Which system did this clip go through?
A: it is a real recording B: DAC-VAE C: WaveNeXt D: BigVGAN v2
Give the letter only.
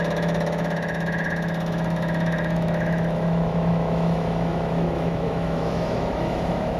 B